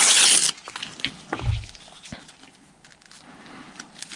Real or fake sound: real